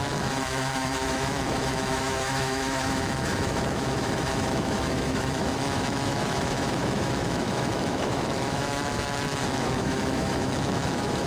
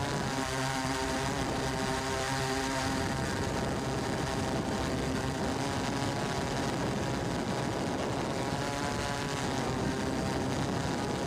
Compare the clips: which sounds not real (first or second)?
first